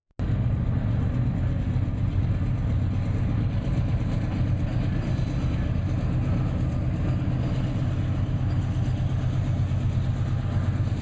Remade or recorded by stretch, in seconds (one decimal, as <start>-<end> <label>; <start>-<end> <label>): 0.0-11.0 recorded